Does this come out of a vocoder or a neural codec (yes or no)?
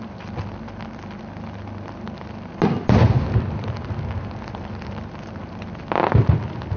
no